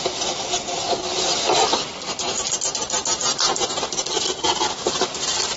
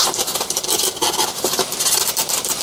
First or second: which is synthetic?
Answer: second